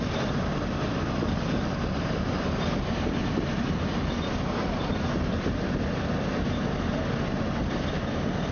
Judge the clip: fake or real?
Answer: fake